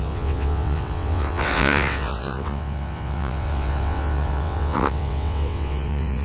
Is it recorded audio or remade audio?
remade